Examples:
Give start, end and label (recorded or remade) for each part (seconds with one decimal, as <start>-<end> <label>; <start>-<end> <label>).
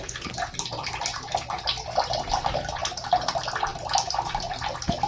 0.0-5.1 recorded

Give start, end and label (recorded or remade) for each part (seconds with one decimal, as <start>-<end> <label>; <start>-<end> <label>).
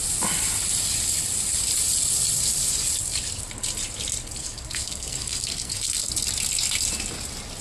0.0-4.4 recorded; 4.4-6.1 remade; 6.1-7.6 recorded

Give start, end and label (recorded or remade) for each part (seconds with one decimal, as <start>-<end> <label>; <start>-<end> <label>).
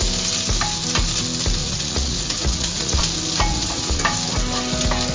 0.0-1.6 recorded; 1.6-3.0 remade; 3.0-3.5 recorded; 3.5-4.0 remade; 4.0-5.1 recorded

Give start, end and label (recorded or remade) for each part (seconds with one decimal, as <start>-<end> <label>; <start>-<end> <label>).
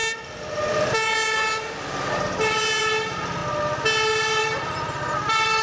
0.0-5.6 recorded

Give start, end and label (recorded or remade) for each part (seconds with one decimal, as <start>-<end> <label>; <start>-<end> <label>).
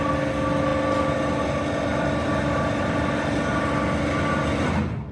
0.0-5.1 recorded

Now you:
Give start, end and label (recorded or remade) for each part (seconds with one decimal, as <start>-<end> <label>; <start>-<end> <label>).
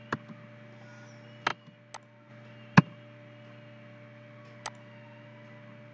0.0-5.9 recorded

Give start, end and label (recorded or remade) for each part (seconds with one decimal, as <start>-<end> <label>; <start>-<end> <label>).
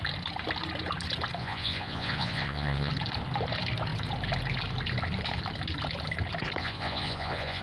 0.0-1.4 recorded; 1.4-2.9 remade; 2.9-6.6 recorded; 6.6-7.6 remade